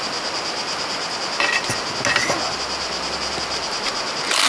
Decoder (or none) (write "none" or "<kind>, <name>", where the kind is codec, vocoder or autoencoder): none